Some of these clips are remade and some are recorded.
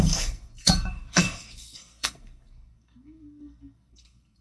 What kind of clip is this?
remade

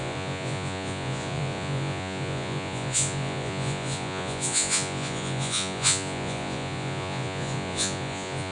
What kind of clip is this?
remade